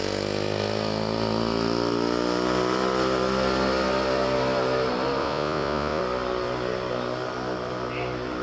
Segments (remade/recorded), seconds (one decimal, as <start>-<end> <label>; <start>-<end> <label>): 0.0-5.2 recorded; 5.2-6.0 remade; 6.0-8.4 recorded